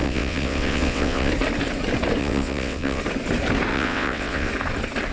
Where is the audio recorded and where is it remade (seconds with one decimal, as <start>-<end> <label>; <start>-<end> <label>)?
0.0-1.3 remade; 1.3-2.2 recorded; 2.2-3.0 remade; 3.0-3.7 recorded; 3.7-4.5 remade; 4.5-5.1 recorded